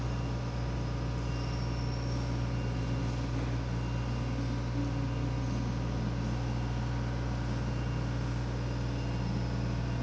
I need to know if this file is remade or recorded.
recorded